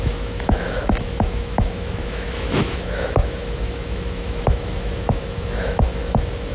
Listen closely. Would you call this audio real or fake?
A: fake